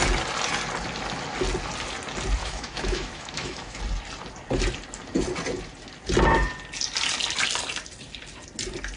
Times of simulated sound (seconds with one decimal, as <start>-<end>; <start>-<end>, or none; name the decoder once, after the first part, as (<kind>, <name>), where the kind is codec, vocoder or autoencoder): 2.4-3.8 (autoencoder, DAC-VAE)